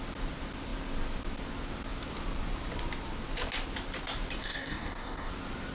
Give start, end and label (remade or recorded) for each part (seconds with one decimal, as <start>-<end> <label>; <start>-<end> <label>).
0.0-4.4 recorded; 4.4-5.3 remade; 5.3-5.7 recorded